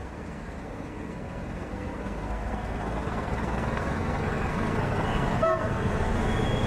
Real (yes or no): no